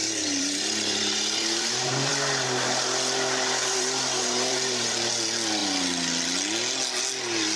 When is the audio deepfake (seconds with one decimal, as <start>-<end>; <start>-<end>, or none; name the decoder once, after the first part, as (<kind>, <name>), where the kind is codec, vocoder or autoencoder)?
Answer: 0.0-2.1 (vocoder, BigVGAN v2); 3.6-5.1